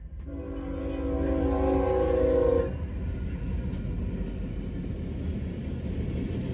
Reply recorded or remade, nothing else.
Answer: recorded